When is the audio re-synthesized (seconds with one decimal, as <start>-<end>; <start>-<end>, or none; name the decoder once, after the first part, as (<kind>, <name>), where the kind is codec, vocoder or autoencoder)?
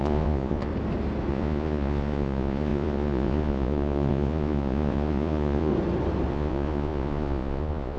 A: 0.0-0.7 (vocoder, Vocos); 1.3-5.7; 6.3-8.0